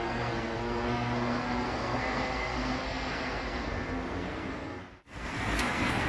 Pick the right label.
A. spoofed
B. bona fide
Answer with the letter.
A